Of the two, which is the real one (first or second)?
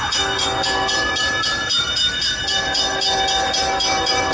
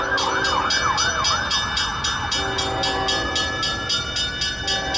second